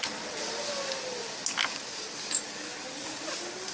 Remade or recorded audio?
recorded